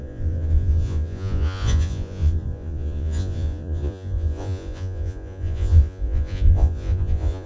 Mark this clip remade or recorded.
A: remade